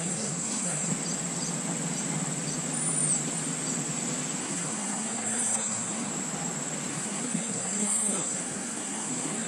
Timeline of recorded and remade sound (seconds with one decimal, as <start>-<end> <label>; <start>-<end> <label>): 0.0-0.9 remade; 0.9-4.4 recorded; 4.4-6.1 remade; 6.1-6.9 recorded; 6.9-9.5 remade